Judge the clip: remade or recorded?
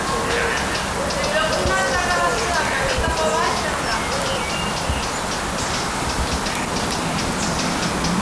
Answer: recorded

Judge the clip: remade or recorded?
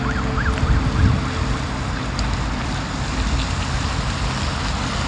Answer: recorded